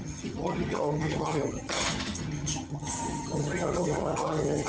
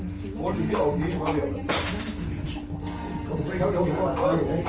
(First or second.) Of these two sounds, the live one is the second